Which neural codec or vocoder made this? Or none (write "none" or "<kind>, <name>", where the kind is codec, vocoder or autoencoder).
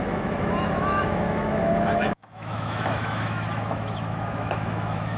autoencoder, DAC-VAE